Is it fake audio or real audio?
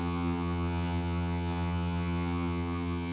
fake